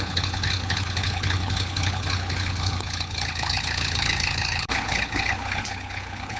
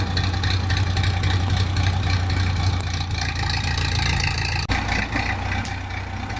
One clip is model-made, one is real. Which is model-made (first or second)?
first